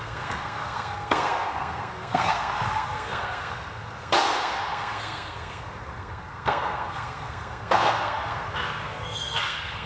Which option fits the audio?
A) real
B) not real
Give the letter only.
B